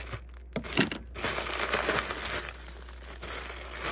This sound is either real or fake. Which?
real